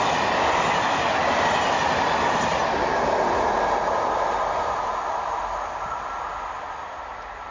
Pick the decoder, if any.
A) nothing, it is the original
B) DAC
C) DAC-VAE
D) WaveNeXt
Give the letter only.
A